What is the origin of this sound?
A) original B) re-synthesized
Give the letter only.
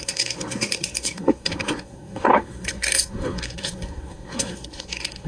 B